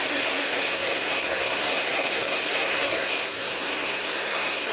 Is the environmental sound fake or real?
fake